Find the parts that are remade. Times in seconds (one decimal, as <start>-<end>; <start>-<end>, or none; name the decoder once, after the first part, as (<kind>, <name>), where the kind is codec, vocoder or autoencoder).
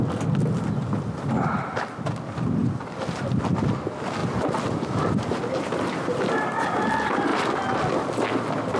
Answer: none